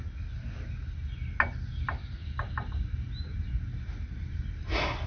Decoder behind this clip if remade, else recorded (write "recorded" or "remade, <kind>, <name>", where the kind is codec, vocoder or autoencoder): recorded